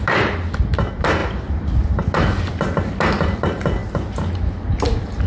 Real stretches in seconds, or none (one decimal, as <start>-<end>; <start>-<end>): 3.8-5.3